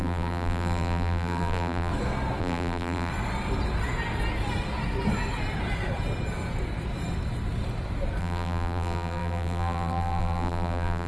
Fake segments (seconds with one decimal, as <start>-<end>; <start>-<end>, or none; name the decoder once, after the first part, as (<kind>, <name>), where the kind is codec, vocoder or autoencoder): 0.0-1.9 (vocoder, BigVGAN v2); 2.4-3.1; 8.2-11.1